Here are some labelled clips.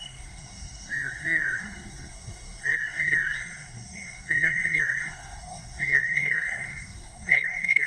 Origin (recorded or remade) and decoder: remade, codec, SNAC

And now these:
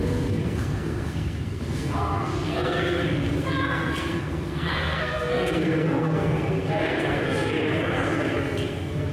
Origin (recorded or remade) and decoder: remade, codec, SNAC